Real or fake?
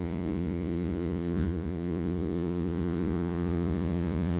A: fake